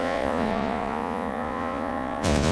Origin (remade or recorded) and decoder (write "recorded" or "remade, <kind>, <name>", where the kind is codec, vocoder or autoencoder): remade, vocoder, Vocos